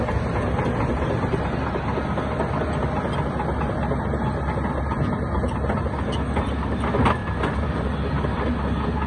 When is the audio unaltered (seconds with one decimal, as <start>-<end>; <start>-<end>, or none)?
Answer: 0.0-7.2; 8.1-9.1